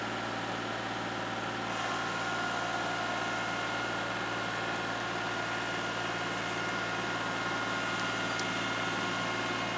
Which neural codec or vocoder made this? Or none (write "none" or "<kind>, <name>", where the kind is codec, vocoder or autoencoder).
none